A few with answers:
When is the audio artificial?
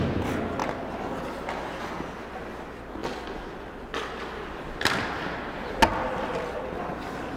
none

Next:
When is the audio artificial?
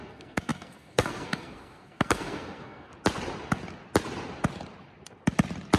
0.0-2.9 (codec, SNAC)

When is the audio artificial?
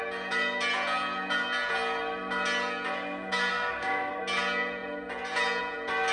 3.5-4.2 (codec, SNAC)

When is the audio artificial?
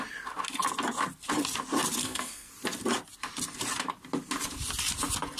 2.0-2.5 (codec, SNAC)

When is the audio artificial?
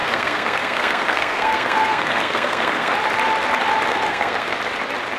0.0-2.9 (codec, SNAC); 3.9-4.6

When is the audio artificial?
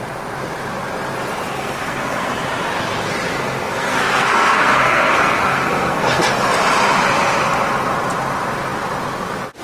1.5-2.3 (codec, SNAC); 3.3-6.2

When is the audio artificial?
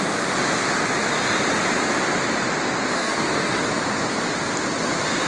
3.0-3.6 (codec, SNAC)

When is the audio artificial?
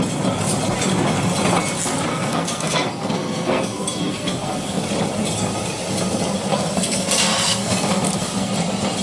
2.1-4.8 (codec, SNAC); 6.5-8.5